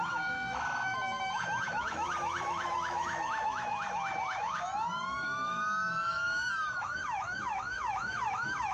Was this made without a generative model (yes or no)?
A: no